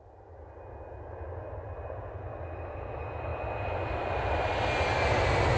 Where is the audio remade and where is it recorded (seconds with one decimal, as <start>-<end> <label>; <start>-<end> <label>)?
0.0-5.6 recorded